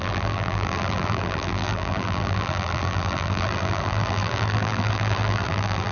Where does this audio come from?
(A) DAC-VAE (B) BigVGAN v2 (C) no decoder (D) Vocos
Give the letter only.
B